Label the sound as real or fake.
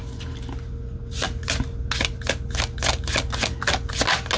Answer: real